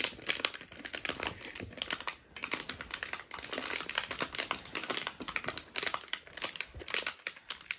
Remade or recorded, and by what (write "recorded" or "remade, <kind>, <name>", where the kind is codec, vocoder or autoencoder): recorded